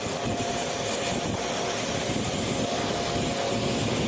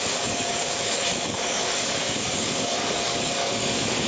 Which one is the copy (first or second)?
second